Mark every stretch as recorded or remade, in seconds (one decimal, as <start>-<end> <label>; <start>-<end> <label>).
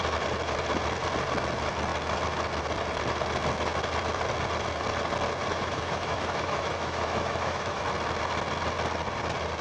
0.0-5.5 recorded; 5.5-7.8 remade; 7.8-9.6 recorded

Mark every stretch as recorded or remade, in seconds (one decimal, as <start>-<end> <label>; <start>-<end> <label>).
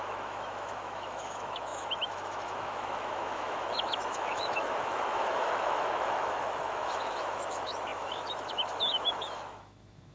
0.0-10.1 remade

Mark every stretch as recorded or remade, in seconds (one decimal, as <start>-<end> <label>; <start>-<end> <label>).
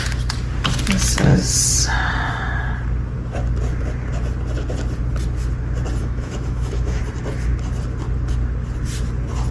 0.0-6.0 recorded; 6.0-7.0 remade; 7.0-9.5 recorded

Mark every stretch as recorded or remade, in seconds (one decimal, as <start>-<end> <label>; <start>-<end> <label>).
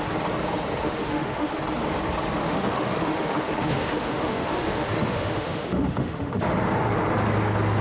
0.0-0.8 recorded; 0.8-1.6 remade; 1.6-2.4 recorded; 2.4-6.4 remade; 6.4-7.8 recorded